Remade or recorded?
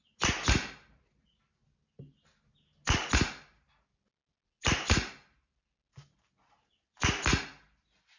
recorded